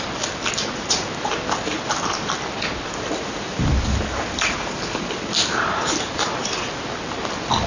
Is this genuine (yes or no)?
yes